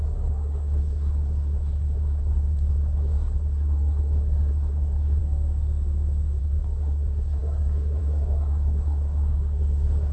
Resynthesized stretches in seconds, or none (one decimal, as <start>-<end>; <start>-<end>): 0.0-5.2; 6.4-10.1